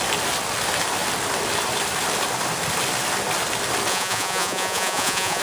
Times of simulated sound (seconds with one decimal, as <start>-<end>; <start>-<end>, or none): 3.9-5.4